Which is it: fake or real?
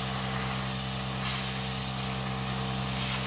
real